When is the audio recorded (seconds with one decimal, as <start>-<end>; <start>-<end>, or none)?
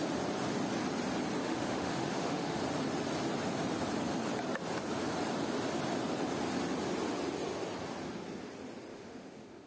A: 0.0-1.4; 2.6-8.9